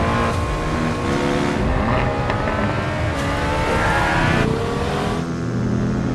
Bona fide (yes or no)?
yes